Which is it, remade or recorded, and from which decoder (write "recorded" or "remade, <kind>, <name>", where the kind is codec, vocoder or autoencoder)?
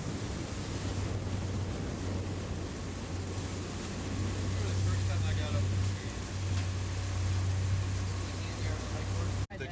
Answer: recorded